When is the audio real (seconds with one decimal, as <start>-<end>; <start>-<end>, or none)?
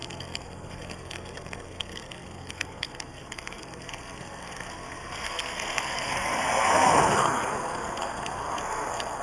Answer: none